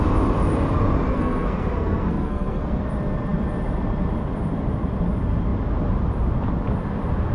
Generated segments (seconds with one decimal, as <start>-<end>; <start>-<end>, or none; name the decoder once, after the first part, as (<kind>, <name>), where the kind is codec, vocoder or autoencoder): 1.1-2.8 (codec, SNAC)